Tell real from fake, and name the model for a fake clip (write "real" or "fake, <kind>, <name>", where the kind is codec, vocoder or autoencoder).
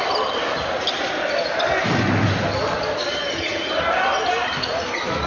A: real